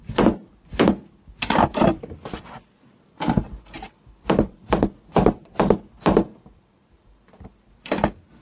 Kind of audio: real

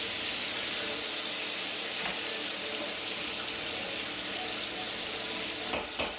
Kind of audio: real